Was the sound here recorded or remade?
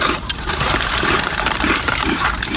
remade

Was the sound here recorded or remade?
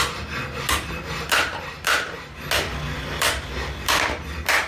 recorded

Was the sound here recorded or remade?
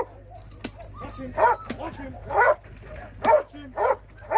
recorded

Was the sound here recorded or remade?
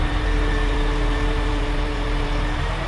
remade